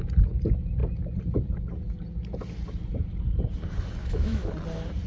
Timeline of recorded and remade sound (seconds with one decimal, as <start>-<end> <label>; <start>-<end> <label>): 0.0-4.0 recorded; 4.0-4.5 remade; 4.5-5.1 recorded